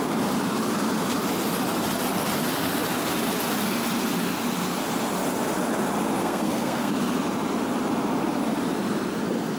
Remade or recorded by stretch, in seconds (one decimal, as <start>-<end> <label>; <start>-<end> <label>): 0.0-6.2 recorded; 6.2-6.9 remade; 6.9-9.6 recorded